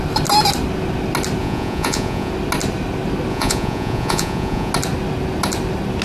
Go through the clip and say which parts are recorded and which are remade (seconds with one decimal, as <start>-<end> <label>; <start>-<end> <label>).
0.0-1.4 recorded; 1.4-2.3 remade; 2.3-3.3 recorded; 3.3-4.7 remade; 4.7-6.0 recorded